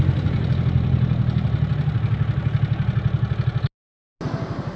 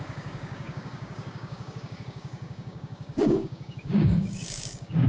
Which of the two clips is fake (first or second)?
second